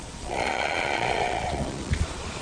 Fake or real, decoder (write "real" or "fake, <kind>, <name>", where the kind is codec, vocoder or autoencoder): fake, vocoder, Vocos